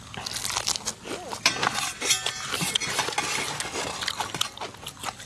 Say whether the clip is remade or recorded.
recorded